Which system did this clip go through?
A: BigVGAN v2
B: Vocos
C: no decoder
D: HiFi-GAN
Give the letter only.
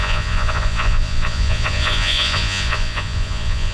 B